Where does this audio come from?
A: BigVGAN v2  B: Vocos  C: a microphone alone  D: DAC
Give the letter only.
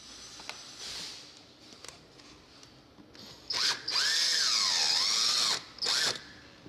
C